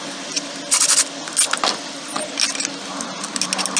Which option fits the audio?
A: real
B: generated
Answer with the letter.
A